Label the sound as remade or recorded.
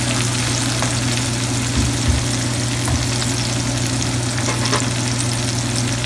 recorded